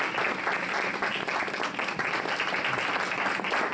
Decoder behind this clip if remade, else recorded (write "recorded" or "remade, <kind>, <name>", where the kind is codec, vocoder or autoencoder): recorded